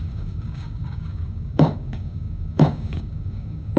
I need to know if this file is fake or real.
fake